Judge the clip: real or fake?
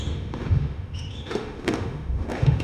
fake